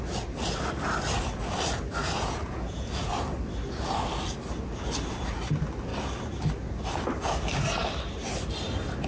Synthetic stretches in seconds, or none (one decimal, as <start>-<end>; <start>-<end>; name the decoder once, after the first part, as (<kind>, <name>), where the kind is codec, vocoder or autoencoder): 2.0-3.1 (vocoder, Vocos)